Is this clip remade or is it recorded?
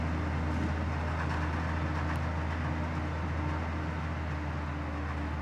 recorded